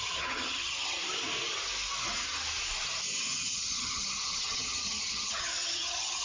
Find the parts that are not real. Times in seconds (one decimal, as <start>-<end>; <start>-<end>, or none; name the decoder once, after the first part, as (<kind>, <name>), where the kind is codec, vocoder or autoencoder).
0.0-1.0 (vocoder, HiFi-GAN); 3.5-6.2